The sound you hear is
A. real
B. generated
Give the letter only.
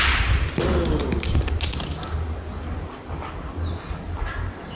A